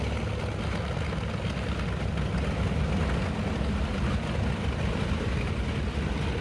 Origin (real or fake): real